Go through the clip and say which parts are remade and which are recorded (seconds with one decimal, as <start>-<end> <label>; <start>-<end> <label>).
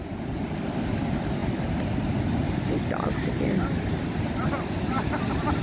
0.0-5.6 recorded